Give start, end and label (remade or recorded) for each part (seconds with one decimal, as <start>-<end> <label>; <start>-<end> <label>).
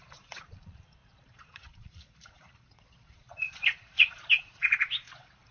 0.0-5.5 remade